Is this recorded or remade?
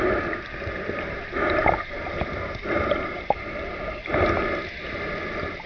recorded